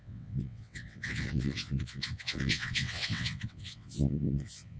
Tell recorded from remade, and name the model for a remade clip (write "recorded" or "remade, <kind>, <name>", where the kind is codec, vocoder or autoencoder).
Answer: remade, vocoder, WaveNeXt